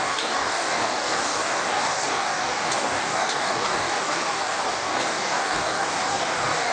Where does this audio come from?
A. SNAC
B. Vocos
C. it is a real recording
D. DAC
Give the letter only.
D